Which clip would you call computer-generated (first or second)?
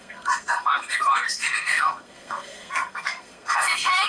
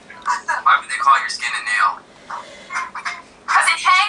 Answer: first